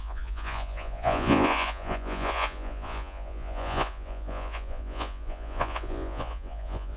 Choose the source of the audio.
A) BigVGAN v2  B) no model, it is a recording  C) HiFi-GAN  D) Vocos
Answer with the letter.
D